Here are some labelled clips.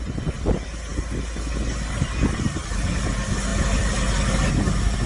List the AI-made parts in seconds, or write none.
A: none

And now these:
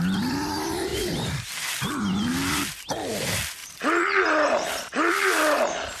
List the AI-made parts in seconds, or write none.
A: 0.9-1.7 (vocoder, BigVGAN v2)

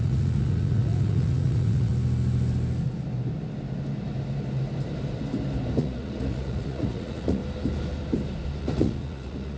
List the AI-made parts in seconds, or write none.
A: 0.0-1.9 (vocoder, Vocos); 5.8-7.4; 8.6-9.6

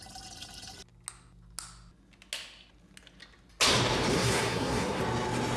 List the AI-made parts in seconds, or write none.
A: 4.1-5.0 (codec, SNAC)

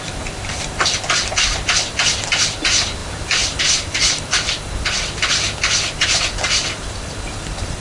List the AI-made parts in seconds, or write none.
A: none

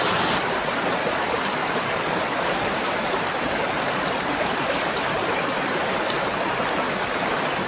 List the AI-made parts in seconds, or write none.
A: 0.0-5.8 (vocoder, BigVGAN v2)

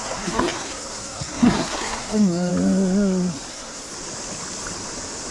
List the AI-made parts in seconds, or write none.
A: 0.0-2.5 (codec, SNAC); 3.5-3.9